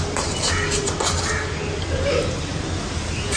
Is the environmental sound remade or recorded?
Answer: recorded